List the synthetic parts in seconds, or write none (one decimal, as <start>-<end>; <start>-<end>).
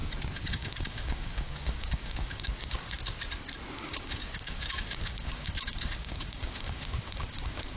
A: 0.5-3.0; 3.8-7.8